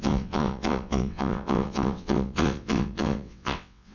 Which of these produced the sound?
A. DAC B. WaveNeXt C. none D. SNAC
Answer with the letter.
B